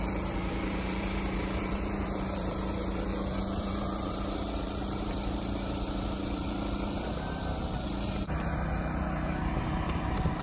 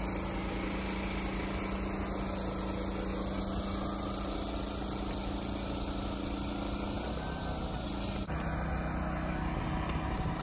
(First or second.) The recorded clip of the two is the second